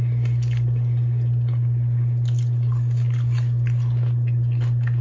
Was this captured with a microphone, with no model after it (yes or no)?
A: yes